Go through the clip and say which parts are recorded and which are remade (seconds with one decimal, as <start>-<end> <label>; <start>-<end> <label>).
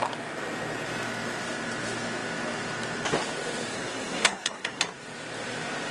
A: 0.0-3.7 recorded; 3.7-4.8 remade; 4.8-5.9 recorded